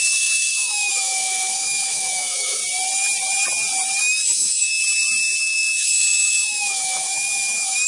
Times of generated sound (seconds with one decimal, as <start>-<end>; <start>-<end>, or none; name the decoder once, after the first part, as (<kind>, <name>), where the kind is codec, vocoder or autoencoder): 0.0-2.6 (autoencoder, DAC-VAE); 4.0-4.8; 5.4-7.9